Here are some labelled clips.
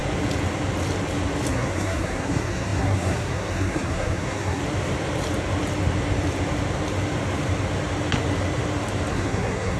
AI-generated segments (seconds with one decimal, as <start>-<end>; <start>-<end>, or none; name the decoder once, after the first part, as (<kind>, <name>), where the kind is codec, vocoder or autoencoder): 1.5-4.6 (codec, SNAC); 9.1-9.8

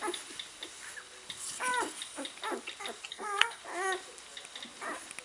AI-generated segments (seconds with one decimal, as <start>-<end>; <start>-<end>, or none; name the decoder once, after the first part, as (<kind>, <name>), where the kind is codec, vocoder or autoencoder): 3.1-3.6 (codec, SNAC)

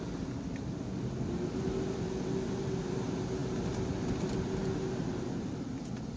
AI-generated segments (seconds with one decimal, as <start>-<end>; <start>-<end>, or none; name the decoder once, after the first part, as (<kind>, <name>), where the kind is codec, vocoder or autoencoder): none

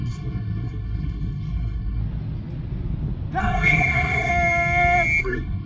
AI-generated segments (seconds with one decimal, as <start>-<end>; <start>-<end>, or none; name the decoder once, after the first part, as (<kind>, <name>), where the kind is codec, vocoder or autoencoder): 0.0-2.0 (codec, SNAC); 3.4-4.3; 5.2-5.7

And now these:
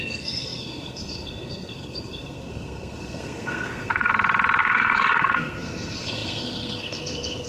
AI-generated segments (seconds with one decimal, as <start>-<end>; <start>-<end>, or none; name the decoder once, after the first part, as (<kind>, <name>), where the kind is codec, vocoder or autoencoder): 0.0-4.1 (codec, SNAC); 4.6-7.5

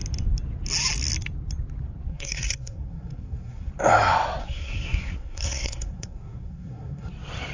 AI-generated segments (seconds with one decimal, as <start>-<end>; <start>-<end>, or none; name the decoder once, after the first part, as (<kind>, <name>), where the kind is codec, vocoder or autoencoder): 2.1-3.7 (codec, SNAC); 4.4-7.1

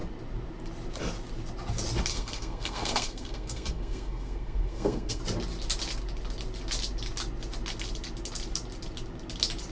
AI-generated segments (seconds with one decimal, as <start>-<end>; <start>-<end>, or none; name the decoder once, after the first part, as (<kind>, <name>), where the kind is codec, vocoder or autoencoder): 2.1-5.2 (codec, SNAC)